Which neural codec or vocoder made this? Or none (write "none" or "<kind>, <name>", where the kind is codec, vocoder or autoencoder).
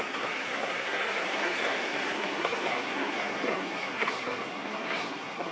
codec, SNAC